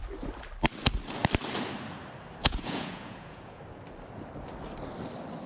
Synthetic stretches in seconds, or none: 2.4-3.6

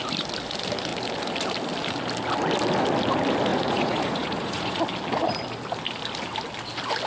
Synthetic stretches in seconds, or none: 3.5-4.8

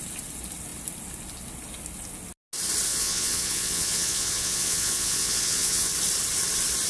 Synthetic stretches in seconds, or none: 2.9-5.9